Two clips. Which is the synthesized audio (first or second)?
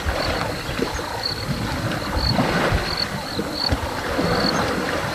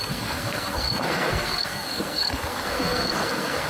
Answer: second